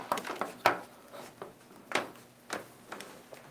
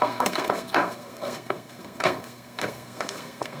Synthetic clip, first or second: second